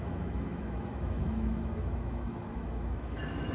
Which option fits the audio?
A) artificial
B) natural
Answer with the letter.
A